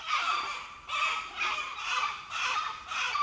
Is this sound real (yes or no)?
yes